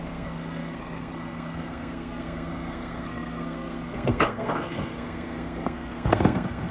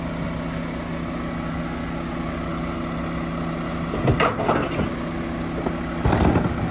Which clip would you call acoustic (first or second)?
second